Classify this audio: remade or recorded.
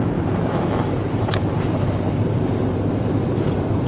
remade